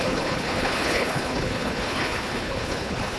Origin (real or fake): fake